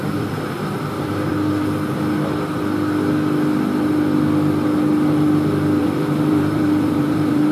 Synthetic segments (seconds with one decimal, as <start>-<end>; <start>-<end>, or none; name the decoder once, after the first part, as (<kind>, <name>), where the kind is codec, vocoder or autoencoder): 0.0-1.3 (vocoder, BigVGAN v2); 5.8-7.5